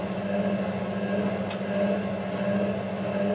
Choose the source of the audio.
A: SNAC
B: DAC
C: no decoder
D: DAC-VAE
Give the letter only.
C